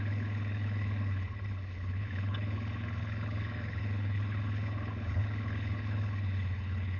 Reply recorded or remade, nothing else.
remade